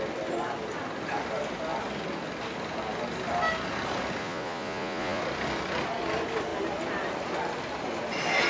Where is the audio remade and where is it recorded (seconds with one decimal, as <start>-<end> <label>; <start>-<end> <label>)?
0.0-4.2 recorded; 4.2-5.2 remade; 5.2-8.5 recorded